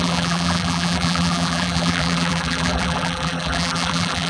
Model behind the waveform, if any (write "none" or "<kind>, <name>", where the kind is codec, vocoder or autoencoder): vocoder, BigVGAN v2